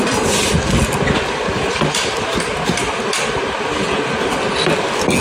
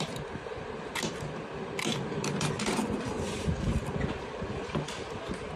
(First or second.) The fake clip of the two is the second